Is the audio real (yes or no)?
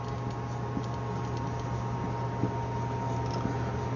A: yes